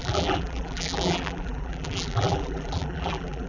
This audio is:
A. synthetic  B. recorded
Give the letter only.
A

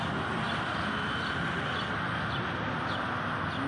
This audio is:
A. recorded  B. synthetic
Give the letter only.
A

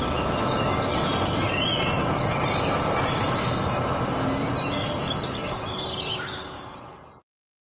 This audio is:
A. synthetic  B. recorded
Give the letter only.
B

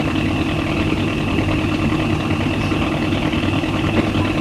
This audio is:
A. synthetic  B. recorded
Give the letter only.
B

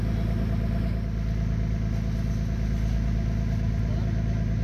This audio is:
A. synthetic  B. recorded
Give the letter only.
B